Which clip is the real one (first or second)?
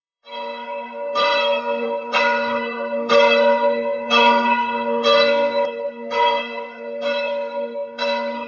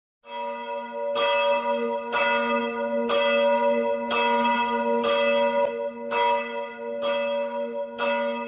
second